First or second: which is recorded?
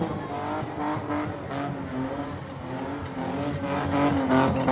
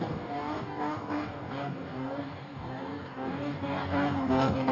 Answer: first